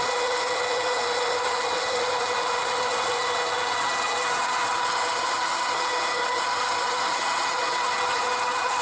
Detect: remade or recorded remade